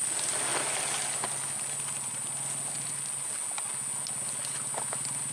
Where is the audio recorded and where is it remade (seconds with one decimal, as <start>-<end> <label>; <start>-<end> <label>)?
0.0-5.3 recorded